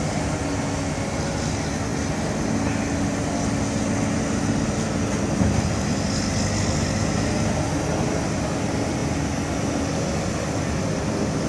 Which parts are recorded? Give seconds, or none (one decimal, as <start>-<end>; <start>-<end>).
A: 0.0-11.5